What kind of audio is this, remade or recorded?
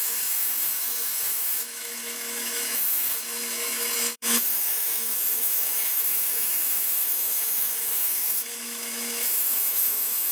remade